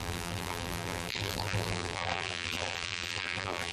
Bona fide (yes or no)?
no